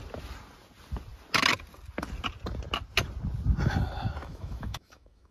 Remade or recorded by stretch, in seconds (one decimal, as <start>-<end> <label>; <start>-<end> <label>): 0.0-4.2 recorded; 4.2-5.3 remade

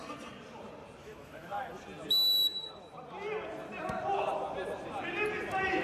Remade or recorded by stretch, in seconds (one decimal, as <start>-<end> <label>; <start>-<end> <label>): 0.0-1.0 recorded; 1.0-1.8 remade; 1.8-5.8 recorded

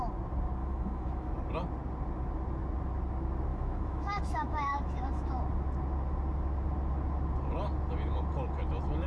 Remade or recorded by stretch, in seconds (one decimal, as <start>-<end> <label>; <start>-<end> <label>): 0.0-0.6 recorded; 0.6-1.3 remade; 1.3-3.5 recorded; 3.5-5.4 remade; 5.4-9.1 recorded

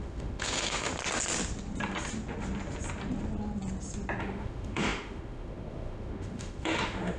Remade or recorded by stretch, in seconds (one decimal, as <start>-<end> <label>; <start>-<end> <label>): 0.0-0.9 remade; 0.9-4.2 recorded; 4.2-7.2 remade